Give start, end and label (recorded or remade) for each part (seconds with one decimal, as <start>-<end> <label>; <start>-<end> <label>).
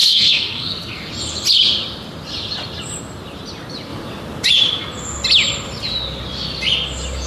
0.0-1.1 remade; 1.1-7.3 recorded